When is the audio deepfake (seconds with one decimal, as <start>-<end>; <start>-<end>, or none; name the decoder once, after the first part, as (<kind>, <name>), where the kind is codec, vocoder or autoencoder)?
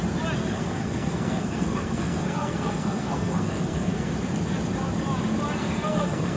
0.4-4.2 (codec, SNAC); 5.6-6.4